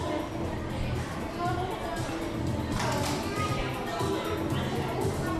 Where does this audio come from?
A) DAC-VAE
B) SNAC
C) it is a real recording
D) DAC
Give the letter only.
C